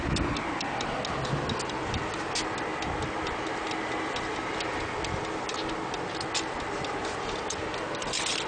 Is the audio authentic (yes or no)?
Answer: yes